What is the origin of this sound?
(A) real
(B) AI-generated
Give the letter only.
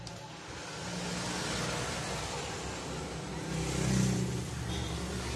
A